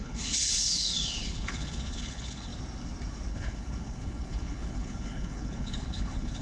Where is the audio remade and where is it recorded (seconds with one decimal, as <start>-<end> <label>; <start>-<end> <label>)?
0.0-2.5 remade; 2.5-3.3 recorded; 3.3-6.4 remade